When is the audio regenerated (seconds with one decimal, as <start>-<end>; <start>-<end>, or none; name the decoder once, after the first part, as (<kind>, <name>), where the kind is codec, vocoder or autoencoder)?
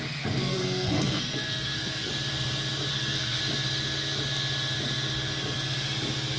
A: 0.4-2.1 (codec, SNAC); 2.9-3.4